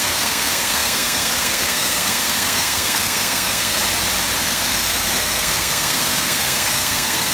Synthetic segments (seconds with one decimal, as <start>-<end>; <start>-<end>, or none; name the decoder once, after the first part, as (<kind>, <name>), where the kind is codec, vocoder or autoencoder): 0.0-3.8 (codec, SNAC); 4.4-7.3